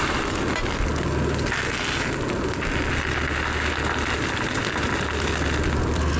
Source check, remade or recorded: recorded